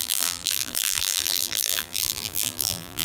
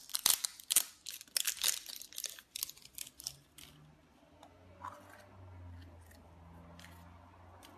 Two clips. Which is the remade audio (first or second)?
first